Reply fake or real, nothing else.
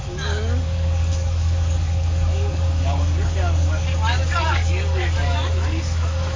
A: fake